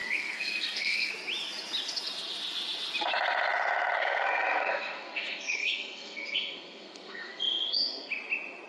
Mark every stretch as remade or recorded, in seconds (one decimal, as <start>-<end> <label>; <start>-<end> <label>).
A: 0.0-1.1 remade; 1.1-4.0 recorded; 4.0-8.1 remade; 8.1-8.7 recorded